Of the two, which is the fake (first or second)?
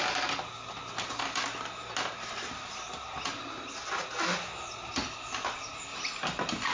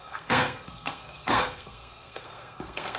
second